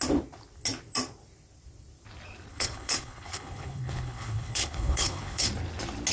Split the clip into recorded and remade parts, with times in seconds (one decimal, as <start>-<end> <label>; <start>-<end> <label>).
0.0-2.5 recorded; 2.5-5.5 remade; 5.5-6.1 recorded